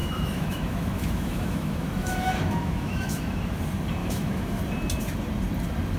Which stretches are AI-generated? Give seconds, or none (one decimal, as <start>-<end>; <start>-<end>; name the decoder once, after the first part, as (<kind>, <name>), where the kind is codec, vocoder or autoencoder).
0.0-3.6 (autoencoder, DAC-VAE); 4.0-4.6

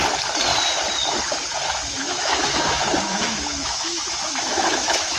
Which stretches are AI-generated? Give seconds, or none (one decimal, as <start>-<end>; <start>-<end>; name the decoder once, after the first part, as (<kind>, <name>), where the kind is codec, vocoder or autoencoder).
2.0-5.2 (autoencoder, DAC-VAE)

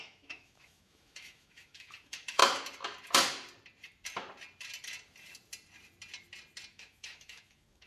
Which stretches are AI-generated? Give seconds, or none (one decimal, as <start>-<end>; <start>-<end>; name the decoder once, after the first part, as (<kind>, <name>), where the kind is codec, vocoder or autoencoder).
0.0-2.4 (autoencoder, DAC-VAE); 6.7-7.9

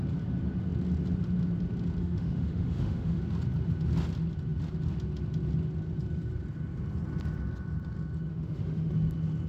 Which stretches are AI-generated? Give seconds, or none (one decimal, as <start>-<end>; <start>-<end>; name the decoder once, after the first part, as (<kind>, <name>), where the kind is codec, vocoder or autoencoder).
2.0-3.2 (autoencoder, DAC-VAE); 8.3-8.9

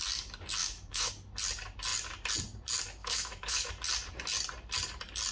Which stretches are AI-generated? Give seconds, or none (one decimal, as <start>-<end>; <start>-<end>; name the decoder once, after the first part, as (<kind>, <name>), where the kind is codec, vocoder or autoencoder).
0.6-1.1 (autoencoder, DAC-VAE); 3.0-3.7